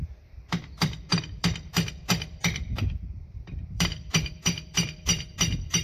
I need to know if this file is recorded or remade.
remade